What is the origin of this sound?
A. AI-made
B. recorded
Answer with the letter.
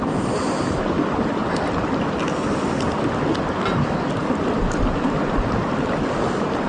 B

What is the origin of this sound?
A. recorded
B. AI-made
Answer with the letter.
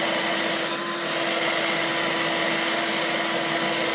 A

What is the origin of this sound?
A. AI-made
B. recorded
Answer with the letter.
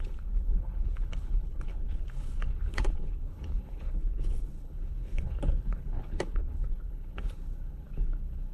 A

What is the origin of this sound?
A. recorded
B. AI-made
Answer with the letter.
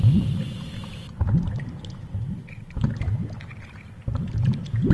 A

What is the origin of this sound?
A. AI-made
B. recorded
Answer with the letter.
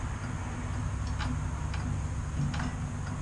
B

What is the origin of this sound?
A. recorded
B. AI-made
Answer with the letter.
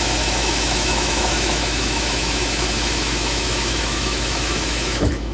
B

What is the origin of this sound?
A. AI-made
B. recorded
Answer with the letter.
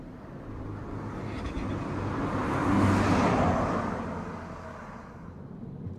B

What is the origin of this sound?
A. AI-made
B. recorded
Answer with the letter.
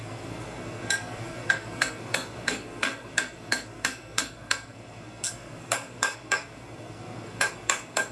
A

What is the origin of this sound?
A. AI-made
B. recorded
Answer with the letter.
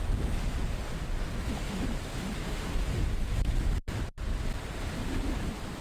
B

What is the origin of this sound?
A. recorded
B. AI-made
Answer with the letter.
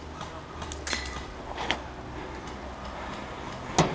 A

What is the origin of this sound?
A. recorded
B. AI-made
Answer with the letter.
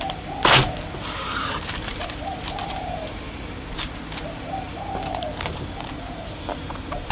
B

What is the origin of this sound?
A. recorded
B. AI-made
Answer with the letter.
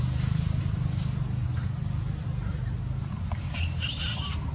A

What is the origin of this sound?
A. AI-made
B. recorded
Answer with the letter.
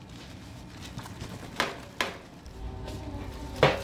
B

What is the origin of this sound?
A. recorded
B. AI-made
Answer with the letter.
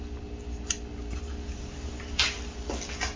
A